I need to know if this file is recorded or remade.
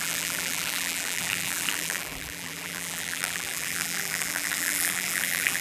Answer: remade